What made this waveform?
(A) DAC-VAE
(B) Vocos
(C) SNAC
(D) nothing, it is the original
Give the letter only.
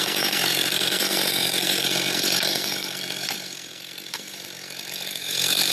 C